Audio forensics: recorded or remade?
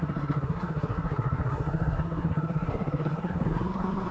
remade